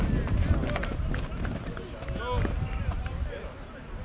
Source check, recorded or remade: recorded